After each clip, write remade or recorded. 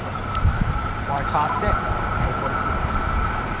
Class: remade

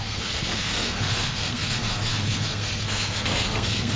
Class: remade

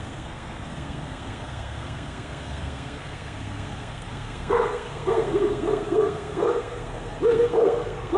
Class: remade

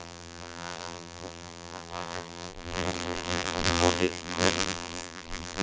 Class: remade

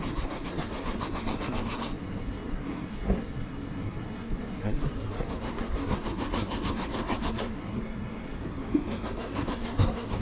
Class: remade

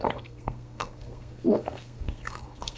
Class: remade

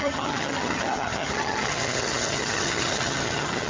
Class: remade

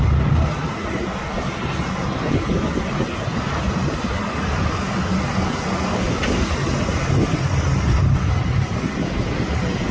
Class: recorded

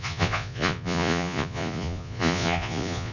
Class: remade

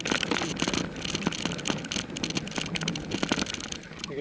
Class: recorded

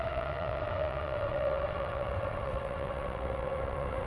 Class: remade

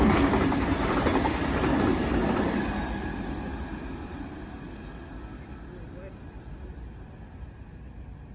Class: recorded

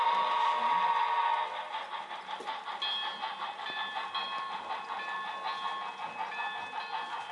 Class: recorded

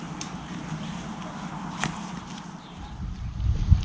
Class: recorded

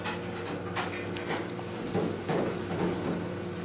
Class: recorded